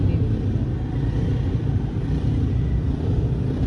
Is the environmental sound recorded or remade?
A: recorded